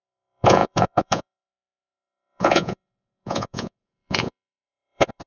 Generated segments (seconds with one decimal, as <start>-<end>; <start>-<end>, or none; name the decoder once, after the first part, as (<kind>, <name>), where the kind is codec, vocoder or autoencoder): 0.0-5.3 (vocoder, Vocos)

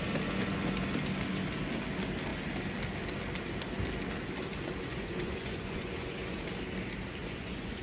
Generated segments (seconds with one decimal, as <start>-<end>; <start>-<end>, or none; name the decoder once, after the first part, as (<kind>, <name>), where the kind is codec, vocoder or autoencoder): 4.9-6.4 (vocoder, Vocos); 7.2-7.8

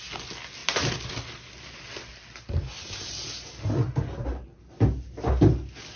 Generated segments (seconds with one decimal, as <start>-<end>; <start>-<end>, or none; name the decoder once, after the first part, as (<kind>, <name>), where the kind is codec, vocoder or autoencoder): none

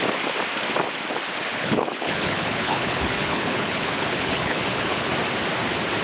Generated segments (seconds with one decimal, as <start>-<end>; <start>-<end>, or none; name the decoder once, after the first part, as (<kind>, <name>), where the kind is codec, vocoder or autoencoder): 1.5-5.1 (codec, HILCodec)

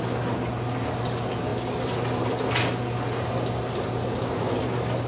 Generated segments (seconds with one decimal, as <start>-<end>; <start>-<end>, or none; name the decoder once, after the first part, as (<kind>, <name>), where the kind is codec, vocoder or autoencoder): none